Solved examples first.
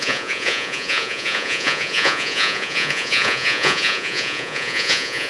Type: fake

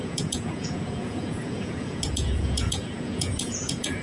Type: fake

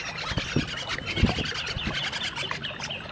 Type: real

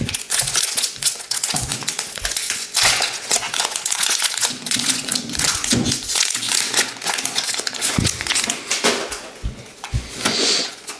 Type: fake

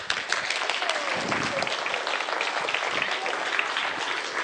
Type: real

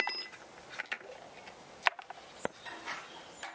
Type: real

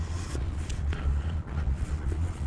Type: fake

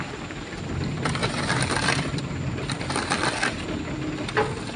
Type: real